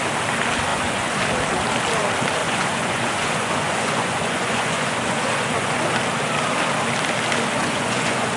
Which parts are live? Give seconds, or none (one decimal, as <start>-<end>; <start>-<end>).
0.0-0.7; 1.2-2.4; 5.9-7.6